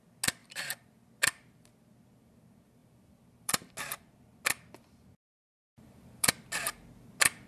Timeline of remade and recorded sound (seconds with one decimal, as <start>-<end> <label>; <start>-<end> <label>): 0.0-0.4 recorded; 0.4-1.1 remade; 1.1-2.8 recorded; 2.8-3.7 remade; 3.7-5.6 recorded; 5.6-6.3 remade; 6.3-7.5 recorded